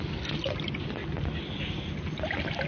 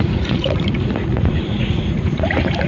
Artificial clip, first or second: second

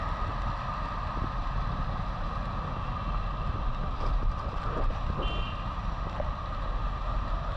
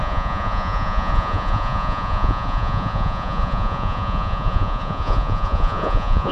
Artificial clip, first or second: second